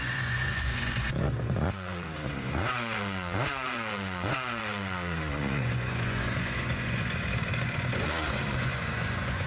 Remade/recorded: remade